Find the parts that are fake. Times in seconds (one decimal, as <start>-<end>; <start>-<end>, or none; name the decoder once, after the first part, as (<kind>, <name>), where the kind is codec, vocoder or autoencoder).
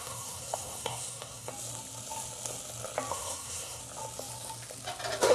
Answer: 0.0-1.5 (codec, SNAC); 3.1-3.8